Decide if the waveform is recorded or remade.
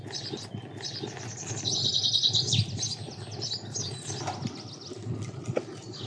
recorded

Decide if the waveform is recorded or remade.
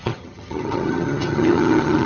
remade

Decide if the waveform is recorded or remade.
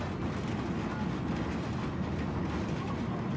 recorded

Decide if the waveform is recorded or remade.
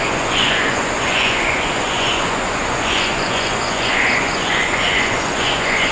remade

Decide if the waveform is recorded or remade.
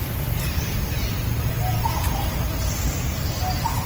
recorded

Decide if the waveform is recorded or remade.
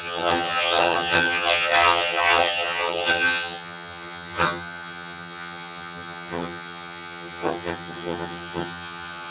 remade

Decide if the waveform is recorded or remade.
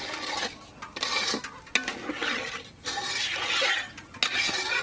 recorded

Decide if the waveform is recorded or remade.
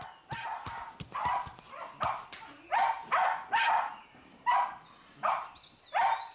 recorded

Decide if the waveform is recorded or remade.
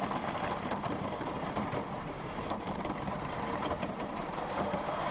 remade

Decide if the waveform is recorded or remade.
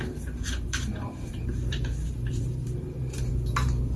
remade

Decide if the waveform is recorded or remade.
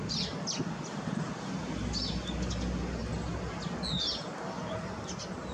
recorded